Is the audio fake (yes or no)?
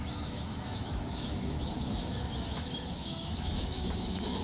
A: yes